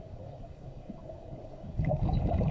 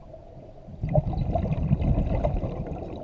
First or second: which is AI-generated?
first